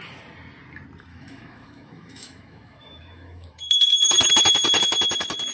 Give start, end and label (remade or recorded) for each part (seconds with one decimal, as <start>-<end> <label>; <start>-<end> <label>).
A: 0.0-1.1 recorded; 1.1-4.3 remade; 4.3-5.5 recorded

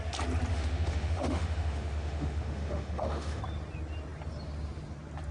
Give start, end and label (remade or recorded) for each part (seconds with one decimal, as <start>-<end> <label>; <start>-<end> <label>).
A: 0.0-0.5 recorded; 0.5-3.4 remade; 3.4-5.3 recorded